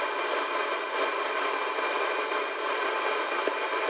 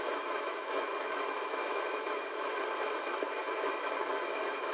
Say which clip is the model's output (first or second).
second